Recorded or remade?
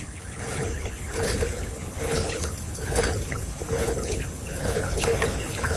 remade